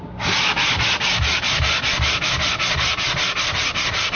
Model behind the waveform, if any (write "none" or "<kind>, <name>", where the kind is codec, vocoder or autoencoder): none